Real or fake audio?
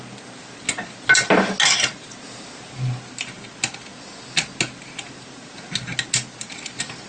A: real